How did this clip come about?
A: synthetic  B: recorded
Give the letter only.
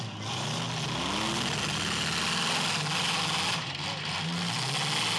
B